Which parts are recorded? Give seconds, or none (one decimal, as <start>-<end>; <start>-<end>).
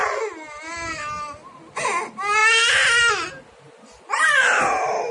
0.0-5.1